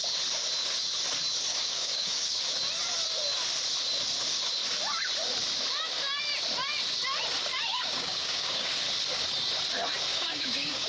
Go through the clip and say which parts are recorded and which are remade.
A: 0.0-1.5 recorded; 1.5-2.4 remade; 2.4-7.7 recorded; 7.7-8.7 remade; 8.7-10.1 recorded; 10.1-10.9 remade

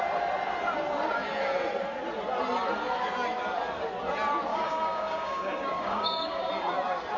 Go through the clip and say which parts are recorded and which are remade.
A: 0.0-4.5 recorded; 4.5-6.5 remade; 6.5-7.2 recorded